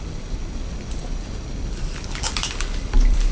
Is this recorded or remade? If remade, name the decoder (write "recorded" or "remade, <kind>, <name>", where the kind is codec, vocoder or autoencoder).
remade, vocoder, BigVGAN v2